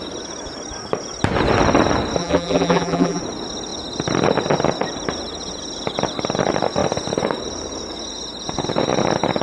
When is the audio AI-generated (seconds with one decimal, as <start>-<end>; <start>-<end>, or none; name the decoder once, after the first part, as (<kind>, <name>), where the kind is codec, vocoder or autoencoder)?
2.2-3.2 (vocoder, BigVGAN v2)